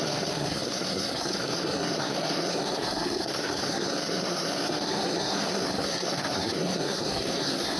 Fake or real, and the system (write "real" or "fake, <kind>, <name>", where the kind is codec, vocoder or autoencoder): fake, codec, SNAC